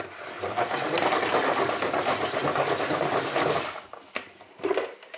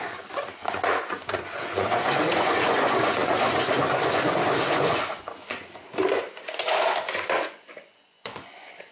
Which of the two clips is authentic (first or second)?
first